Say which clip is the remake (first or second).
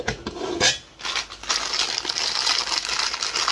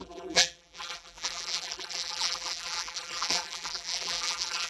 second